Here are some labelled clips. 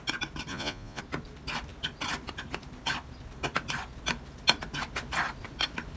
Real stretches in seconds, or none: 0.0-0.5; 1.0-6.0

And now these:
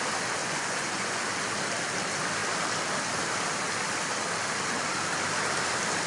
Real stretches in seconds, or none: 0.0-0.4; 1.2-6.1